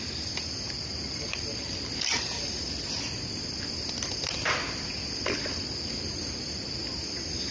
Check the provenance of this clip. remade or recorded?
recorded